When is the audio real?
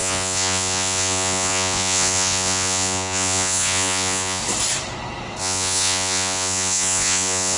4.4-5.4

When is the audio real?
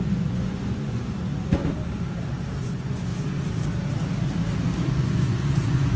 1.6-2.6; 3.1-4.9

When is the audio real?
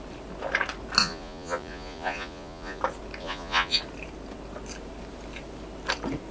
0.0-1.0; 2.8-3.2; 3.8-6.3